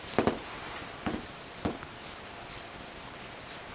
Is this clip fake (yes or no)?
no